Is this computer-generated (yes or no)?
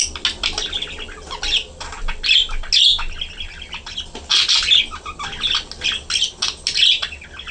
no